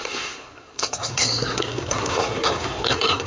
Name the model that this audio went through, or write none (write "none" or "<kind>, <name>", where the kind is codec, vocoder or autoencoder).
codec, SNAC